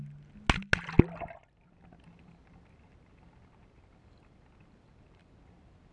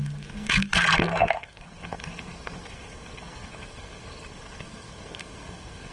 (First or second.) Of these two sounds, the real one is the first